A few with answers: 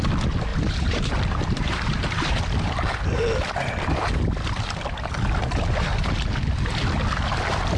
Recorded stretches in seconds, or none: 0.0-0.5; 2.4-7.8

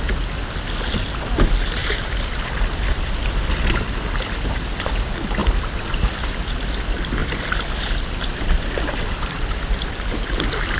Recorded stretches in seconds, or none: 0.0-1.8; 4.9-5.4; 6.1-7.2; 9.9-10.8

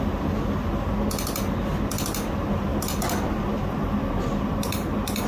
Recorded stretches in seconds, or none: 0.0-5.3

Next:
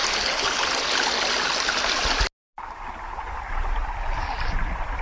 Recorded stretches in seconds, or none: 0.0-5.0

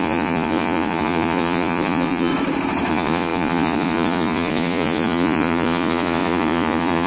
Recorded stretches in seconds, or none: 2.3-2.9

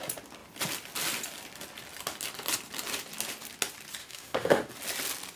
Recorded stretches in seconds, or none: 0.0-4.0; 4.7-5.4

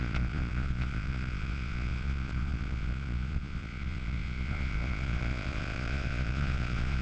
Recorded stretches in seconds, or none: none

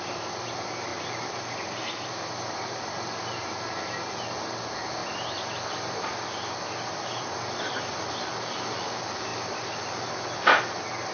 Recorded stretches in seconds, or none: 0.0-0.9; 2.1-5.0; 8.1-11.1